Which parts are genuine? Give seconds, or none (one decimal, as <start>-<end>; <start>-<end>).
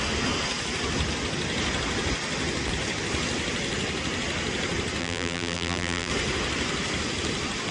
0.0-5.0; 6.1-7.7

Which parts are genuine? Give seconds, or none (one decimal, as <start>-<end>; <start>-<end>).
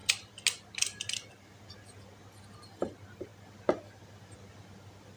0.0-5.2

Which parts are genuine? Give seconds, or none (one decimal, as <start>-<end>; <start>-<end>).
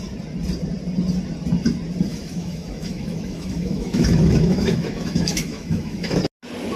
0.0-2.1; 6.2-6.8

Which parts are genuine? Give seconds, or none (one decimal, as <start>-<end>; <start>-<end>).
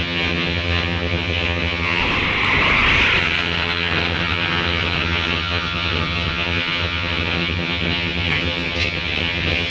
2.0-3.2